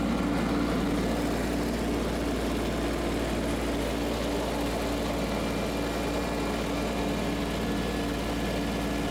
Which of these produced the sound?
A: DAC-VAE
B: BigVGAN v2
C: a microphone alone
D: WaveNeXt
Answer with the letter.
C